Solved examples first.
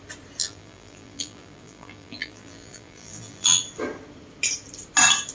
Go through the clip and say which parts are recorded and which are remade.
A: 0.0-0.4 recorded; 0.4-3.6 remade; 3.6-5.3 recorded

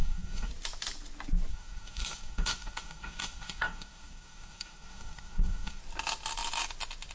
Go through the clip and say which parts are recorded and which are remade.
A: 0.0-0.5 remade; 0.5-1.5 recorded; 1.5-5.8 remade; 5.8-7.1 recorded

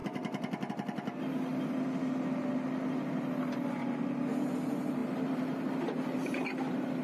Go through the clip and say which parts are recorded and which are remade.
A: 0.0-0.7 remade; 0.7-5.0 recorded; 5.0-6.3 remade; 6.3-7.0 recorded